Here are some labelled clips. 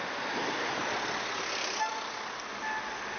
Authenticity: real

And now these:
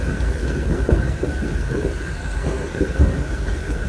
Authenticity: fake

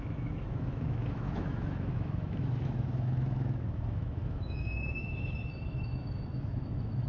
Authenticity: fake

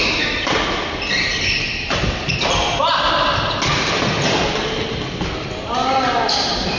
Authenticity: real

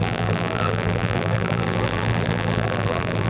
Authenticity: fake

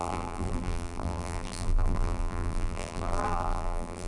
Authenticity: fake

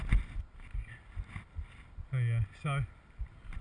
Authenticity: real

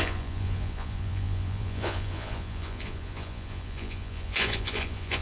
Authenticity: fake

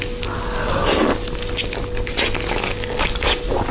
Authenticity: real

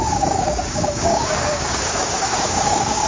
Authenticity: fake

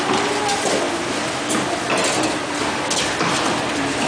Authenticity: real